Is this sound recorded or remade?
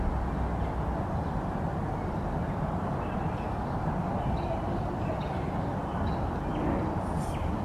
recorded